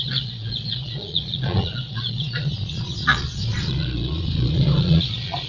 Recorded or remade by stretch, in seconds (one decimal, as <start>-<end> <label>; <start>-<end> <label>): 0.0-5.5 remade